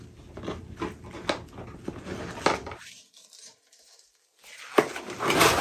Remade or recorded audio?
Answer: recorded